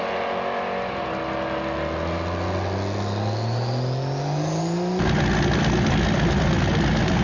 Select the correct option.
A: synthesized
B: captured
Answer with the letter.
B